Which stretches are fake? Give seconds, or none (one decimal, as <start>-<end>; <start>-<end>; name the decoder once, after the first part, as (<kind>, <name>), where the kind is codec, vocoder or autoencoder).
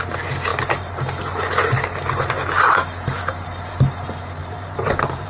4.4-5.3 (vocoder, BigVGAN v2)